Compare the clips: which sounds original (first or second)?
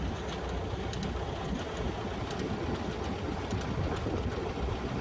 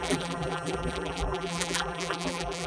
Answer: first